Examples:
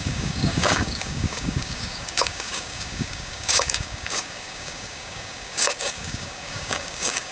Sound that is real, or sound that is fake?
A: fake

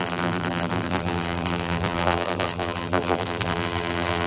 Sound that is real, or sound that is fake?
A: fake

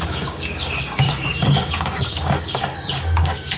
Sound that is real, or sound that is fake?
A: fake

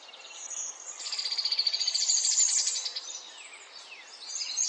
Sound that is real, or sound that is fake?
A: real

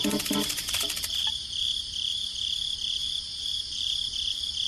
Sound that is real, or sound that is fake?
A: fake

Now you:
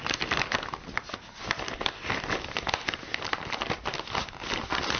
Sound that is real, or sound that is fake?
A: real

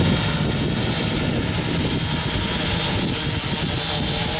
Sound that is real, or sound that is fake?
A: real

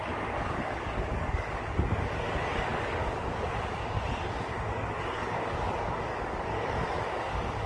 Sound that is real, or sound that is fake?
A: fake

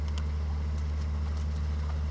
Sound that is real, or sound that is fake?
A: real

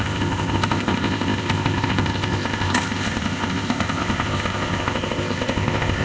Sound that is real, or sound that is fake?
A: fake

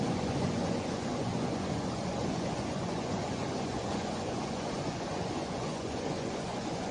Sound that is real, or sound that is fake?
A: fake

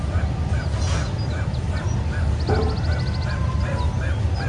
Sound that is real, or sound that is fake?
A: real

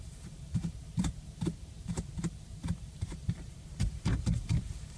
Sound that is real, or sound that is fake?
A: fake